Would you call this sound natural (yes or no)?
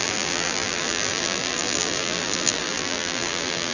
no